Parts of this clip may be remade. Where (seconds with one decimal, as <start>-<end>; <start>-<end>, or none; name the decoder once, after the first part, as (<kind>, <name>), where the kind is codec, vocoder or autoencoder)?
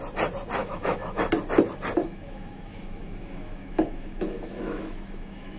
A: 0.6-1.2 (autoencoder, DAC-VAE); 2.0-5.6